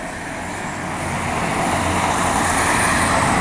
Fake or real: real